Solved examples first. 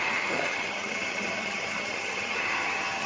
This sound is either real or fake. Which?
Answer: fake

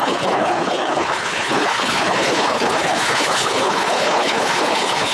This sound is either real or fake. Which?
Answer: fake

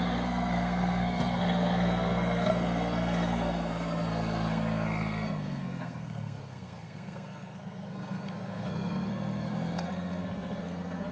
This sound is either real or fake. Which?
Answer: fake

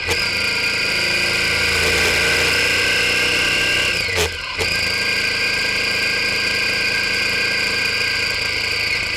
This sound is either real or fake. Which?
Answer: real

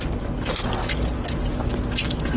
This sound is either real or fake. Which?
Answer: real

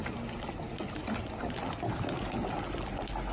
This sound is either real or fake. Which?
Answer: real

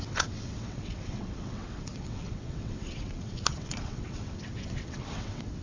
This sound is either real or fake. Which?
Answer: fake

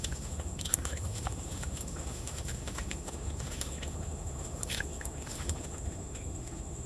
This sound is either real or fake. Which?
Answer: fake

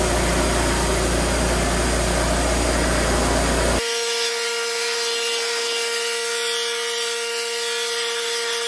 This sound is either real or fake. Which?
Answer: real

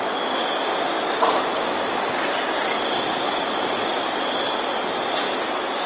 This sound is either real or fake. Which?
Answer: real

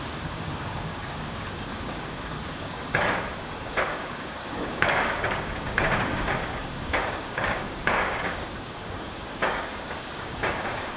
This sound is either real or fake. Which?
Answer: fake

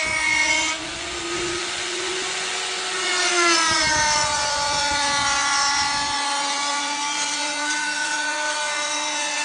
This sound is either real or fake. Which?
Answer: fake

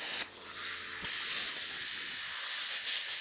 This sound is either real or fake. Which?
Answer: real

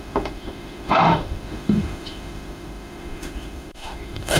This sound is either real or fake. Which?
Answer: fake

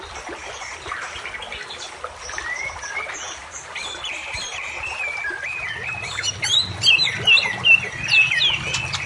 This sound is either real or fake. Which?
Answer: real